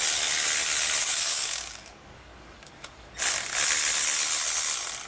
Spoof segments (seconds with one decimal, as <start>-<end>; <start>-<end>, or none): 1.0-3.1